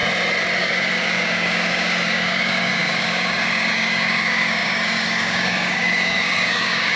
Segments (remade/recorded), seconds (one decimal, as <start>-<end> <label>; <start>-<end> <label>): 0.0-0.6 recorded; 0.6-7.0 remade